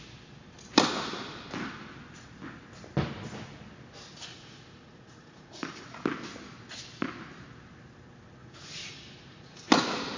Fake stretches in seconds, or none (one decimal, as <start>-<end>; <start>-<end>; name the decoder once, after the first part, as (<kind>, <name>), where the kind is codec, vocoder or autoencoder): 4.3-5.9 (vocoder, Vocos); 8.4-9.7